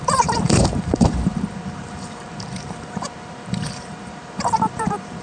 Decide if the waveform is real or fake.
fake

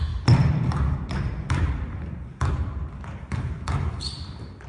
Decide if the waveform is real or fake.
fake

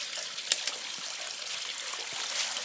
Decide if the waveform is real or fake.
fake